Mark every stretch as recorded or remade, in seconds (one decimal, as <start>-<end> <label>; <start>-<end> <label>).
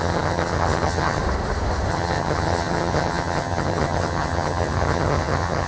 0.0-1.2 remade; 1.2-1.9 recorded; 1.9-5.7 remade